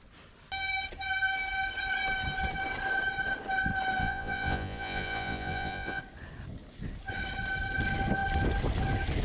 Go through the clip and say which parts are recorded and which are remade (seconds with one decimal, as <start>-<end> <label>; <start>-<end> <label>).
0.0-4.0 recorded; 4.0-6.0 remade; 6.0-9.2 recorded